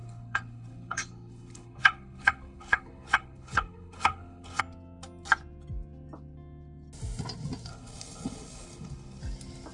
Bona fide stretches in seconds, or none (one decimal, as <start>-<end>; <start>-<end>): 4.6-7.7; 9.2-9.7